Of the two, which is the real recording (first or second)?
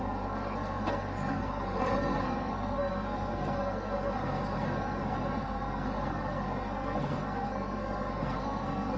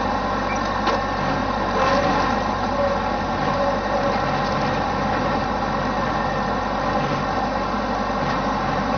second